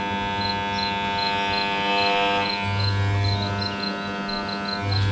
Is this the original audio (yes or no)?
yes